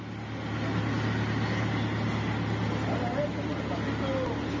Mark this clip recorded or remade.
recorded